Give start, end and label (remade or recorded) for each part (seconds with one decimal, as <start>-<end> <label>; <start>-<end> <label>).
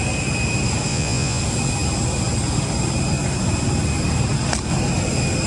0.0-0.9 recorded; 0.9-1.4 remade; 1.4-5.5 recorded